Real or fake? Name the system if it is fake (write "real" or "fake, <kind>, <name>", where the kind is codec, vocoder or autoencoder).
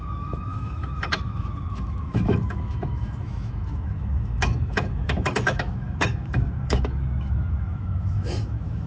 fake, autoencoder, DAC-VAE